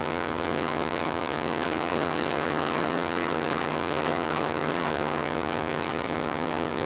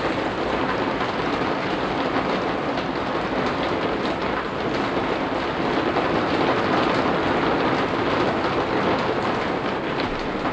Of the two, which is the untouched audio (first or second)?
second